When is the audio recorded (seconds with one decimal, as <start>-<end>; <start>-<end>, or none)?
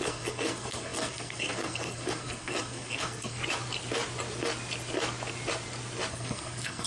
3.4-6.1